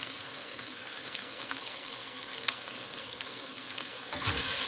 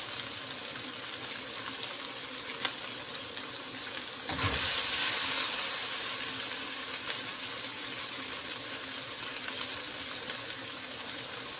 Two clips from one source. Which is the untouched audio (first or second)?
second